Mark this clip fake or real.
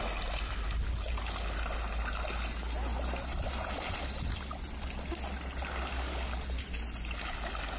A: real